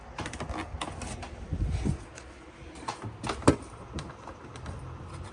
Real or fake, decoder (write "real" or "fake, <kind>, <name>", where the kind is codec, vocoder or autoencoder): real